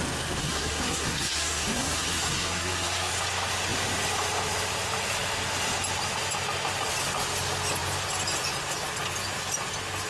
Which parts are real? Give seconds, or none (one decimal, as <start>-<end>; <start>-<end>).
0.0-0.4; 3.1-10.1